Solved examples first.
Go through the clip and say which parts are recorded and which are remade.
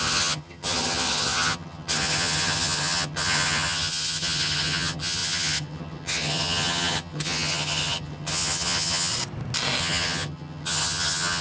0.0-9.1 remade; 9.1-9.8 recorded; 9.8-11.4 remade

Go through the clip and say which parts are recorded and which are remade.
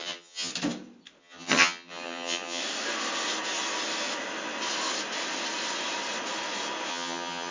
0.0-0.5 remade; 0.5-1.2 recorded; 1.2-2.6 remade; 2.6-6.9 recorded; 6.9-7.5 remade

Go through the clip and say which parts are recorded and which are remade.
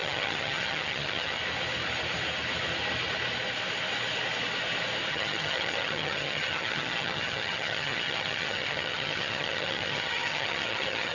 0.0-1.4 remade; 1.4-5.1 recorded; 5.1-11.1 remade